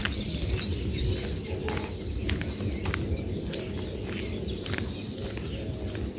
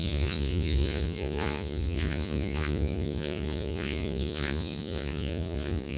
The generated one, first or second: second